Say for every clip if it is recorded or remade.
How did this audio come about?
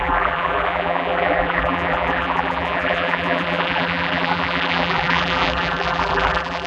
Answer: remade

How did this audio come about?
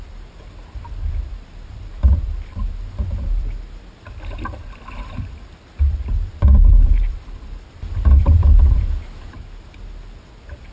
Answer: remade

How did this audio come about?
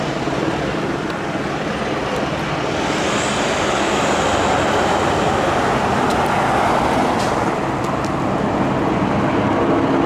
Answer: recorded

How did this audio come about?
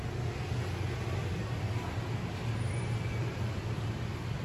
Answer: recorded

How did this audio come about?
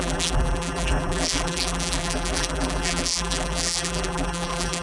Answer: remade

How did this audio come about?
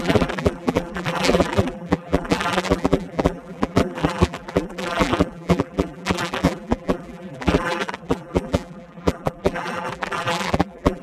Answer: remade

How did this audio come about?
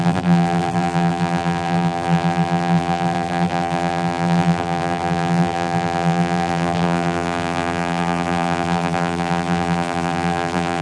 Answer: remade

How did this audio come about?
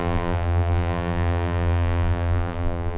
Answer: remade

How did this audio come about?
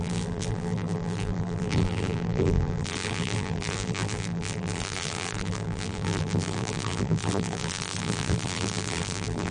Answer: remade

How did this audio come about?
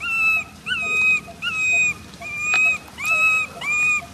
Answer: recorded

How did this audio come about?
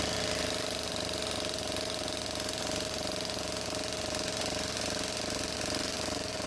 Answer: recorded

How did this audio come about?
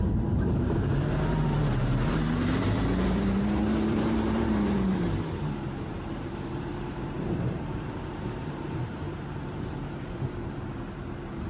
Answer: remade